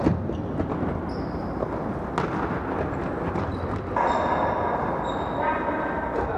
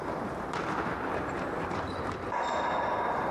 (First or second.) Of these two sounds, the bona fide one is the first